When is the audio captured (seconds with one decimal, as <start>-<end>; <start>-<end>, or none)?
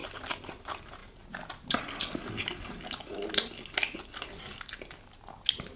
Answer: 0.0-5.8